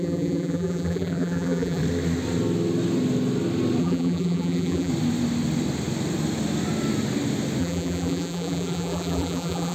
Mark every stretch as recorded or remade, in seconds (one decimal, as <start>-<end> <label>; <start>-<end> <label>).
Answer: 0.0-1.8 remade; 1.8-3.8 recorded; 3.8-4.9 remade; 4.9-7.6 recorded; 7.6-9.7 remade